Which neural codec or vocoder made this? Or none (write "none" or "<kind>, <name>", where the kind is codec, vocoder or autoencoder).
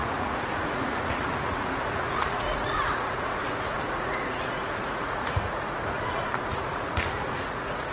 vocoder, Vocos